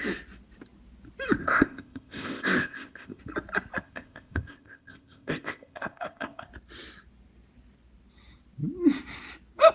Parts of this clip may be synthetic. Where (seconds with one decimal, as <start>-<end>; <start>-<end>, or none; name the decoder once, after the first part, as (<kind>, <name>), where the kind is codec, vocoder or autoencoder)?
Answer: 1.4-3.2 (codec, ZipCodec); 3.8-6.5

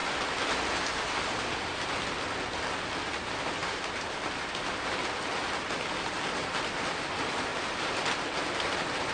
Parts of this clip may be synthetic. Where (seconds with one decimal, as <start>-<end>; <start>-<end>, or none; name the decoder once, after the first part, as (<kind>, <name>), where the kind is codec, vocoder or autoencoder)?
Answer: none

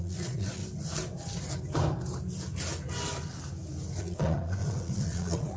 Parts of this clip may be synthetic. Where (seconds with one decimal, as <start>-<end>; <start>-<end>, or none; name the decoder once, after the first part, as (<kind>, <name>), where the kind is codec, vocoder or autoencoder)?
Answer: 0.0-0.6 (vocoder, Vocos); 4.0-5.6

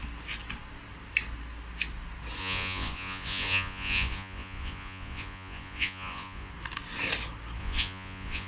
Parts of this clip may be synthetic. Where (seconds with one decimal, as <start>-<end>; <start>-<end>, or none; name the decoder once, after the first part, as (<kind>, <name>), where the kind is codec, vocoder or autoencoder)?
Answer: 2.4-6.5 (vocoder, Vocos); 7.6-8.5

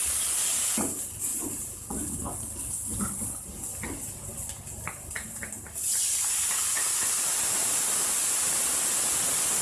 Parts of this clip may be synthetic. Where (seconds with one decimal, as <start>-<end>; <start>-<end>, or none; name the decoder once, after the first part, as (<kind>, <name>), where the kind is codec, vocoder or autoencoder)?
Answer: 1.3-1.9 (vocoder, BigVGAN v2); 3.7-8.7